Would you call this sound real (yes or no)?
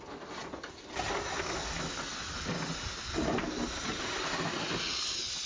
yes